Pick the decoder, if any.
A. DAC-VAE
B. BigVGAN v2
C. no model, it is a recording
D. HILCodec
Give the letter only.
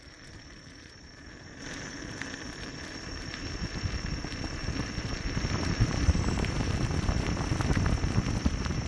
B